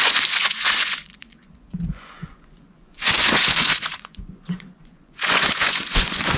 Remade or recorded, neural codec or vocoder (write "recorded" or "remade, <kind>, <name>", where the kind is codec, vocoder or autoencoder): remade, vocoder, Vocos